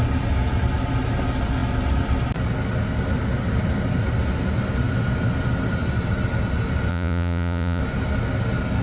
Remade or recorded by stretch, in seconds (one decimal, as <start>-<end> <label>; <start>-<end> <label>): 0.0-6.9 recorded; 6.9-7.8 remade; 7.8-8.8 recorded